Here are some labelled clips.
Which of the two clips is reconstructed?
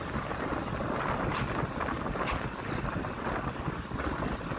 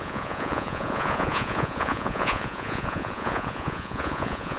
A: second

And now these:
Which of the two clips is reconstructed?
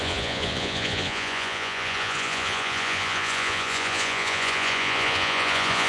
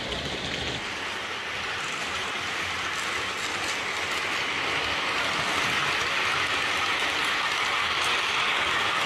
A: first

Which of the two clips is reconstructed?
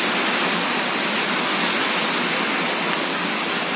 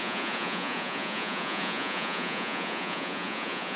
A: second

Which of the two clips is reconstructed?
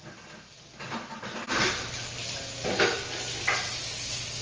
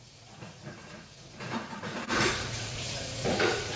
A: second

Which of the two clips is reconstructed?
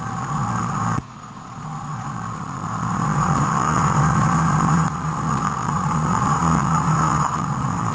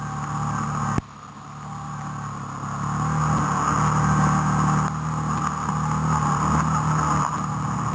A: first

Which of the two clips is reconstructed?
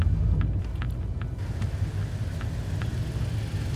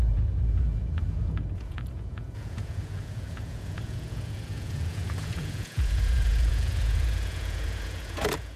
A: second